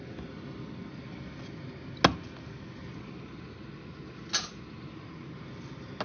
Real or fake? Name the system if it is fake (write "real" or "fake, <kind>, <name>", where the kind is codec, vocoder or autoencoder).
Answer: real